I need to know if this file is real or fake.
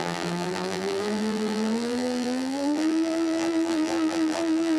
fake